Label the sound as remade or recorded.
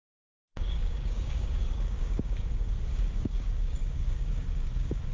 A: remade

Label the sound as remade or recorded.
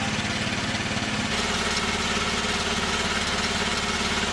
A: recorded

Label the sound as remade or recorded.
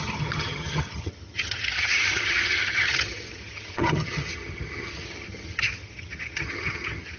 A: remade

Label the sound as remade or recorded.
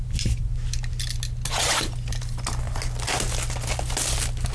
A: recorded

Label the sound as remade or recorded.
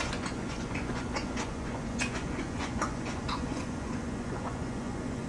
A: remade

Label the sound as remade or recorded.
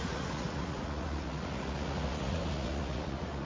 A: remade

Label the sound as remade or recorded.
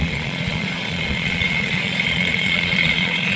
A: remade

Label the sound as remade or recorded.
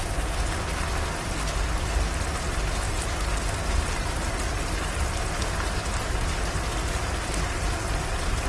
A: recorded